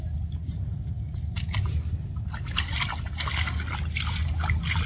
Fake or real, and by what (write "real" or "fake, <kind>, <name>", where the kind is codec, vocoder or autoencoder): real